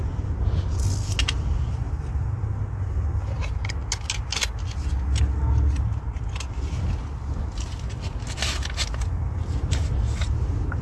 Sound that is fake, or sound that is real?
real